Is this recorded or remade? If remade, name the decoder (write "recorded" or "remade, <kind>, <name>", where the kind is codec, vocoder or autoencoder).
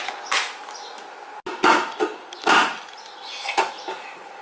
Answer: recorded